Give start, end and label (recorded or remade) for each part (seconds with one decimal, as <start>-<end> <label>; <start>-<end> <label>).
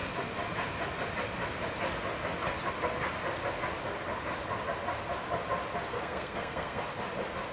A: 0.0-5.9 recorded; 5.9-6.8 remade; 6.8-7.5 recorded